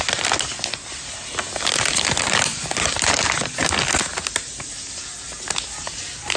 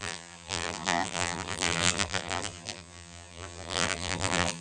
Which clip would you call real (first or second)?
first